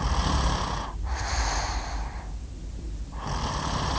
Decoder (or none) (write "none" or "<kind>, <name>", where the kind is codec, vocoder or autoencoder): none